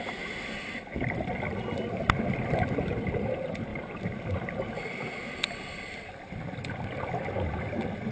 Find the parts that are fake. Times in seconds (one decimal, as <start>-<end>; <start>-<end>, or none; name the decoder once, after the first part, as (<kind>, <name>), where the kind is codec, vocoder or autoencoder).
none